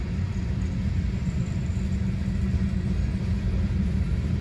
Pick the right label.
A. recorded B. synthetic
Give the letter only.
A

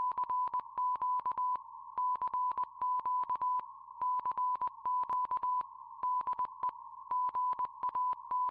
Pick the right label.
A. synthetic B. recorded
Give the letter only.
B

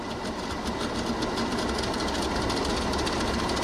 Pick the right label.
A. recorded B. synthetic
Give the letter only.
A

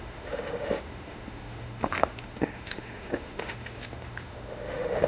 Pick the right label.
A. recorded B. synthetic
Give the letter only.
B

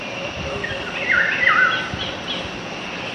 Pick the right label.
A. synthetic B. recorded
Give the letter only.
B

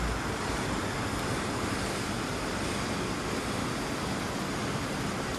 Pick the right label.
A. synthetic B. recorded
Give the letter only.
B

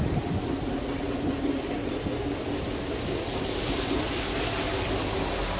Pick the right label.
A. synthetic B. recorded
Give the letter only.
B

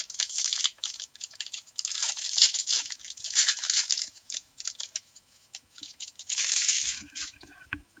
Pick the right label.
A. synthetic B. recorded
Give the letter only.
A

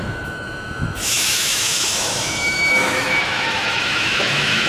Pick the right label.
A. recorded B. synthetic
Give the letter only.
B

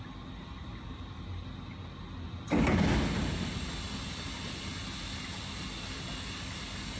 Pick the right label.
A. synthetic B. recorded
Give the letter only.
B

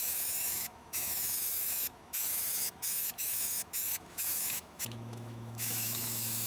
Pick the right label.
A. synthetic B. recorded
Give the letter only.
A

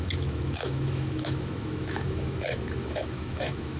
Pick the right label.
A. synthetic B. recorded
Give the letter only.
A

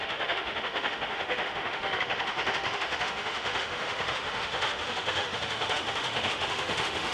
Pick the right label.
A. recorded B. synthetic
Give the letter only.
B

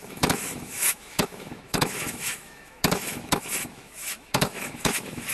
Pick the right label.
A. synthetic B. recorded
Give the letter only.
A